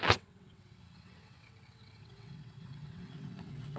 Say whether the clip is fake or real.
fake